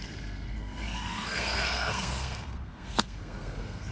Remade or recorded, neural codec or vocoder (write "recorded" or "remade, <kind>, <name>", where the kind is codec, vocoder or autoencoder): remade, codec, SNAC